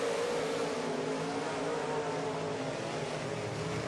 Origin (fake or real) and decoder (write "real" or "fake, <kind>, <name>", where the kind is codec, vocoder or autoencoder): real